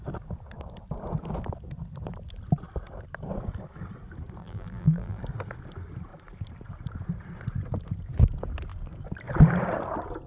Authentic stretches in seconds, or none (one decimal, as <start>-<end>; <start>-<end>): 0.0-4.4; 5.2-10.3